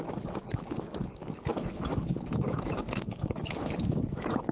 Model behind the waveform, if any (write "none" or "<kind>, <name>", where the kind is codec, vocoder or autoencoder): autoencoder, DAC-VAE